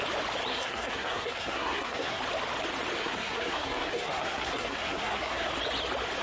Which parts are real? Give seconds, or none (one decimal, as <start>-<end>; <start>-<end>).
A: 0.0-0.5; 2.2-3.0; 5.5-6.2